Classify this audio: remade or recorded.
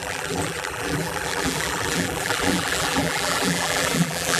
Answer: remade